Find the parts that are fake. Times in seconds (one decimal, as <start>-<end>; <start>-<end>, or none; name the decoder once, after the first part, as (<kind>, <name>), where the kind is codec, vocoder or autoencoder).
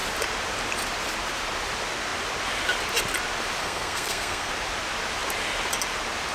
3.6-4.5 (codec, SNAC)